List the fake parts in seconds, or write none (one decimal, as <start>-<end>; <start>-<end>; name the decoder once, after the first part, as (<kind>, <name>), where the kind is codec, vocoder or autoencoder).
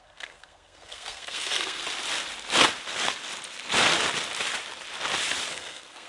0.0-1.8 (codec, SNAC); 5.5-6.1